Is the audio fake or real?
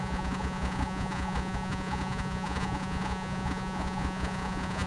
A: fake